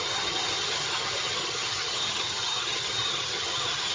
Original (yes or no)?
no